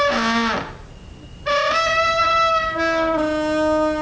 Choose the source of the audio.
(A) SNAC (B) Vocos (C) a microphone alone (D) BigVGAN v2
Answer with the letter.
C